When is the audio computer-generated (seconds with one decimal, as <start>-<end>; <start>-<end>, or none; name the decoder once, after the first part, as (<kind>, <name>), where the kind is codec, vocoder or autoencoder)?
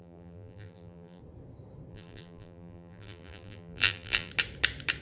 0.0-1.2 (vocoder, BigVGAN v2); 1.9-4.3